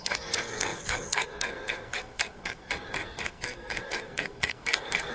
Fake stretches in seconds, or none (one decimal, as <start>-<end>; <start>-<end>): 0.0-5.1